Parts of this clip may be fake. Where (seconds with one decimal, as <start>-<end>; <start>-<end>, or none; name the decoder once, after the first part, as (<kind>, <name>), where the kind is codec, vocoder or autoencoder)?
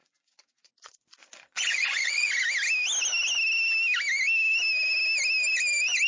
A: 0.0-2.3 (vocoder, Vocos)